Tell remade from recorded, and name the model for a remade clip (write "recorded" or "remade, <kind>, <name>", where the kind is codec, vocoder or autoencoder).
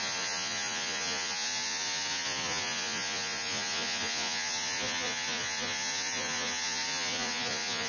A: remade, vocoder, Vocos